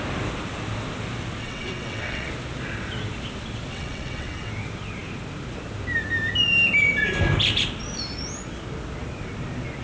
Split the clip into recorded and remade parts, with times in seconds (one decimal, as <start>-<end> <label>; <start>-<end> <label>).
0.0-1.4 recorded; 1.4-2.3 remade; 2.3-3.7 recorded; 3.7-4.5 remade; 4.5-9.8 recorded